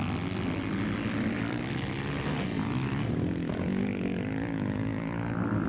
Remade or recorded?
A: recorded